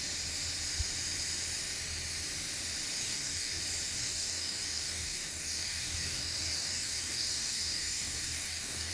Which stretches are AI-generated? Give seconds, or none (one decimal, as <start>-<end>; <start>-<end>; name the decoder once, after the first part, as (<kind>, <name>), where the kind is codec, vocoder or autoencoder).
3.0-3.6 (codec, DAC); 4.0-8.9